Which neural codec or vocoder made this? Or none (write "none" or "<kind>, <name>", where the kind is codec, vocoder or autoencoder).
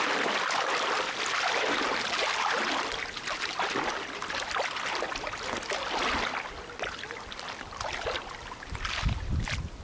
none